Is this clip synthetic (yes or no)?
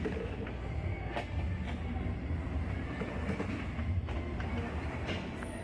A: no